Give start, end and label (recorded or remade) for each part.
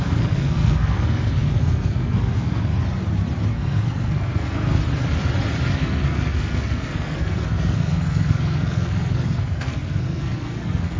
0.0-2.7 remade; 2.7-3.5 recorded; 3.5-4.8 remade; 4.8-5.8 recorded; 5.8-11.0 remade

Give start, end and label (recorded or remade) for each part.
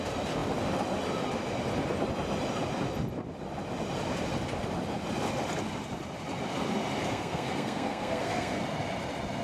0.0-7.1 recorded; 7.1-8.6 remade; 8.6-9.4 recorded